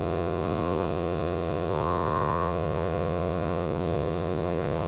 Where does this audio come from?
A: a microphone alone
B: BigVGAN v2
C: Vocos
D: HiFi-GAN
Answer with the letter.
C